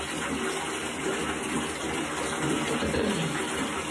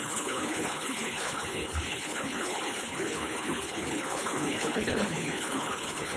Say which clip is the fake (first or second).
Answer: second